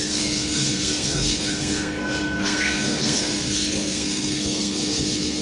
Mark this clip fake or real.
fake